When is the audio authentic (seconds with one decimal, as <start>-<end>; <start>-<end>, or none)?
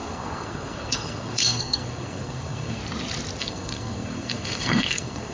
2.8-3.4